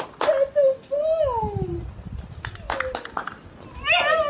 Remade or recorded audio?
recorded